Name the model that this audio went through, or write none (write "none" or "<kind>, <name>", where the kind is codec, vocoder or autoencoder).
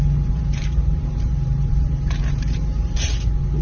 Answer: vocoder, BigVGAN v2